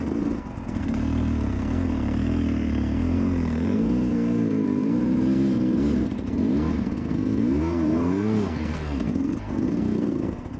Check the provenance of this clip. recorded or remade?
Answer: remade